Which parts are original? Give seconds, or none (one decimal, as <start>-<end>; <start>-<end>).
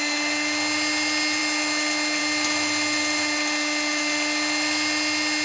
0.0-5.4